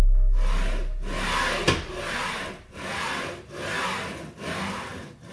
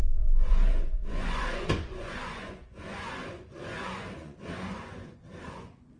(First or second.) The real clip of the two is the first